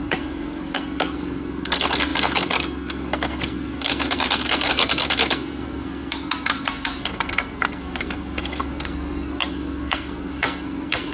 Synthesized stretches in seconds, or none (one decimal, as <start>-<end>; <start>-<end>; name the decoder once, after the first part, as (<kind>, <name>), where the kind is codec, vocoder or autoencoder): 0.0-11.1 (codec, SNAC)